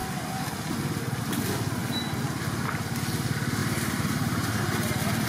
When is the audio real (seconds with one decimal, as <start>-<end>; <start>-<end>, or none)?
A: 0.0-3.6; 4.6-5.3